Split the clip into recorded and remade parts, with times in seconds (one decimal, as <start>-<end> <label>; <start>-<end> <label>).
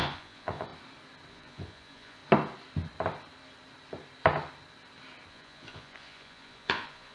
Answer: 0.0-0.7 remade; 0.7-1.3 recorded; 1.3-2.2 remade; 2.2-5.3 recorded; 5.3-7.1 remade